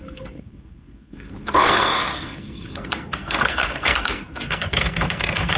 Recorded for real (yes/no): no